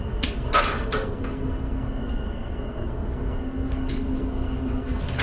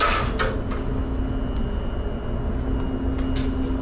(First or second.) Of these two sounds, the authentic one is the second